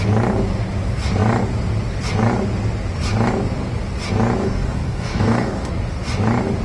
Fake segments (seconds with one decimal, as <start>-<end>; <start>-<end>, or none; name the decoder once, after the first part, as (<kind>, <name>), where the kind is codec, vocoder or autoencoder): 4.4-5.7 (codec, DAC)